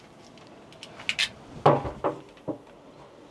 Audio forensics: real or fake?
real